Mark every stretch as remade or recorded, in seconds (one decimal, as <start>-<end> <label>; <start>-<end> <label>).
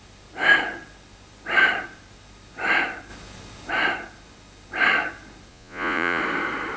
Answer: 0.0-5.5 recorded; 5.5-6.2 remade; 6.2-6.8 recorded